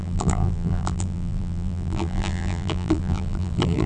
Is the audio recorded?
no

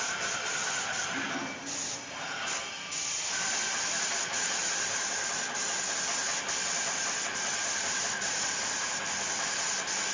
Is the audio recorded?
no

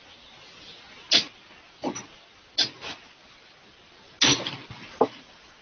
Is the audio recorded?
yes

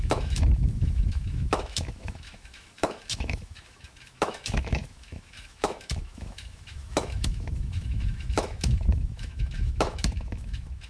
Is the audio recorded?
no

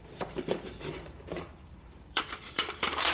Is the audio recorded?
no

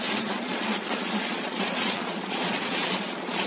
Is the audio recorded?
no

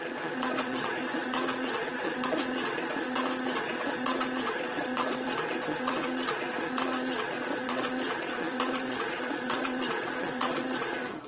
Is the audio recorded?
no